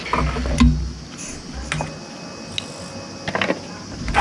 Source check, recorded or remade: recorded